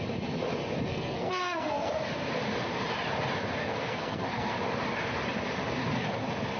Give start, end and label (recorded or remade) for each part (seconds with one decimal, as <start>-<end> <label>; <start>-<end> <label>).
0.0-0.9 recorded; 0.9-1.9 remade; 1.9-3.6 recorded; 3.6-4.6 remade; 4.6-6.6 recorded